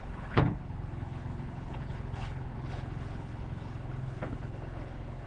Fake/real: fake